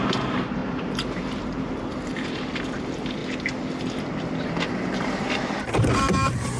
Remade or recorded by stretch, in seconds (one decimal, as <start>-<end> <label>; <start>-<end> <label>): 0.0-3.2 remade; 3.2-4.4 recorded; 4.4-6.6 remade